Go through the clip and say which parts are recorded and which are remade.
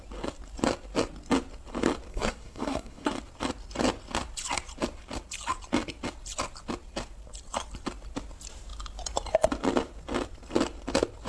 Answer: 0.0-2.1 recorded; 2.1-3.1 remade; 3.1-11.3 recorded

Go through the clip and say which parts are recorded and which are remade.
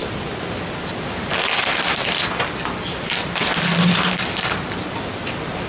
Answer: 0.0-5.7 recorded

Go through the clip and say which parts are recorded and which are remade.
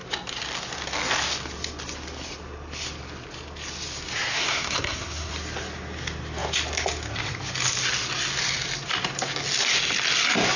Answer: 0.0-4.3 recorded; 4.3-5.3 remade; 5.3-10.6 recorded